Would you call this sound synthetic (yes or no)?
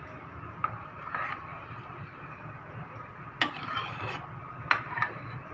no